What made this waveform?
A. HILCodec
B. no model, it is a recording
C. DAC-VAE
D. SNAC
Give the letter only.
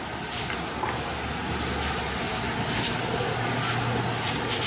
B